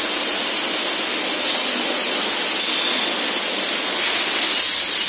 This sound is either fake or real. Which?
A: real